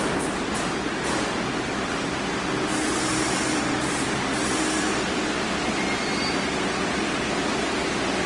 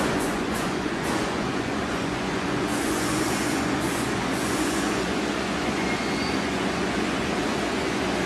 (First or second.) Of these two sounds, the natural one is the first